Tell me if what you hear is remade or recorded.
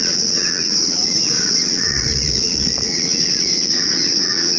remade